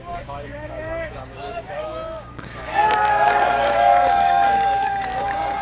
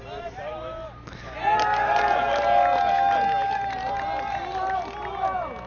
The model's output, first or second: first